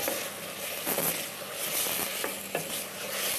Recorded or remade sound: recorded